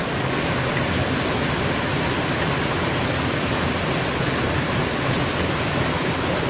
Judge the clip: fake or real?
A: real